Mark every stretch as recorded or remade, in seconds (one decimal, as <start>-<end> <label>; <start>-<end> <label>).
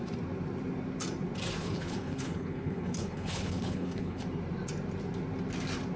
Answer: 0.0-1.6 recorded; 1.6-4.2 remade; 4.2-6.0 recorded